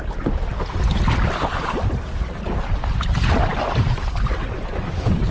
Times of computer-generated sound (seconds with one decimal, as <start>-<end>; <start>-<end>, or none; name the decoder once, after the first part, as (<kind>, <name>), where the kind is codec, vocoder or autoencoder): none